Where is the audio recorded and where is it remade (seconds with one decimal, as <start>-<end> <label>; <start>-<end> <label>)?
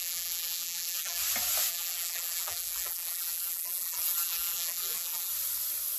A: 0.0-1.2 remade; 1.2-1.7 recorded; 1.7-5.3 remade; 5.3-6.0 recorded